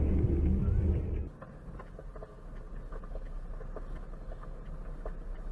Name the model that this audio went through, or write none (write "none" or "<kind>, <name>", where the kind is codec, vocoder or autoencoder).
none